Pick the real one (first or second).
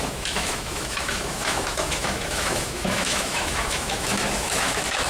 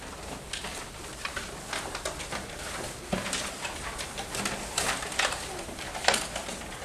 second